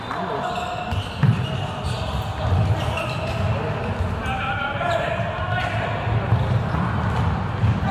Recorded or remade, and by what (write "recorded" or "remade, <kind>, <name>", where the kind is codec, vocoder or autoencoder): recorded